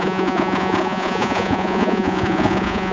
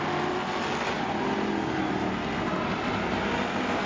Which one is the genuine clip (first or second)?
second